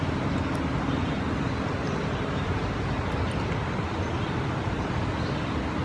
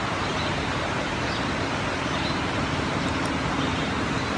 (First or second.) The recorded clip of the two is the first